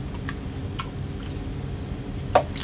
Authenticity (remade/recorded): recorded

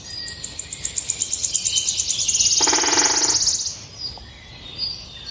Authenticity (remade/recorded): recorded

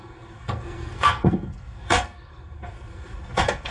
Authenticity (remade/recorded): remade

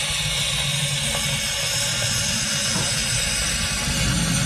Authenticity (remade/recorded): recorded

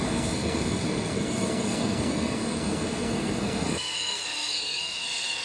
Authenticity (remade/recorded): remade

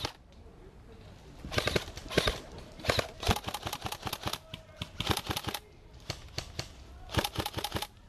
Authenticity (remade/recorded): recorded